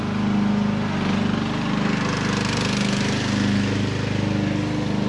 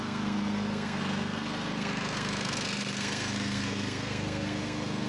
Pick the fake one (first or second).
second